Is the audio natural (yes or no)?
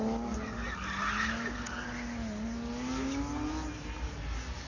yes